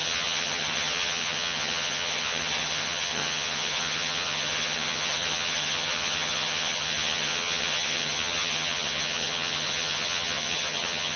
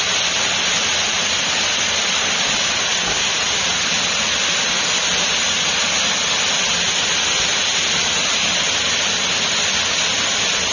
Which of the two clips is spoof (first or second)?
first